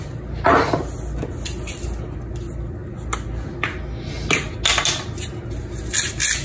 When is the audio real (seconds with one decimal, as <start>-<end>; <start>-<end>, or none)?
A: 0.0-6.4